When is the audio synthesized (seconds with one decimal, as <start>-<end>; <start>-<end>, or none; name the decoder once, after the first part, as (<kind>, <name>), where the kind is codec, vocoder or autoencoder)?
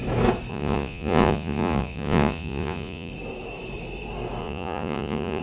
0.5-3.1 (vocoder, Vocos); 4.4-5.4